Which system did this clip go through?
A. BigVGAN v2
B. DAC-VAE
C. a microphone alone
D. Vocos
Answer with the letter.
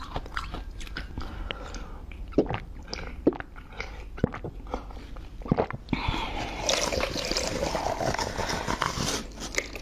C